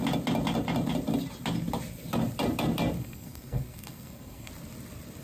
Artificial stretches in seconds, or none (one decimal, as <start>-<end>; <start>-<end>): 3.0-4.5